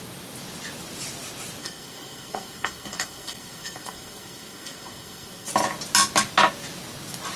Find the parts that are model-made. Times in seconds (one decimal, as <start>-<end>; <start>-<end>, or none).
1.6-5.5